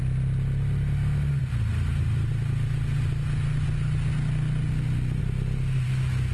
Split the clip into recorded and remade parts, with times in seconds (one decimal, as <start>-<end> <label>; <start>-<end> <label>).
0.0-6.3 recorded